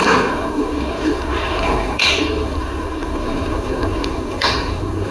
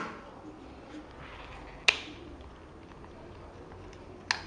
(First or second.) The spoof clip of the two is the first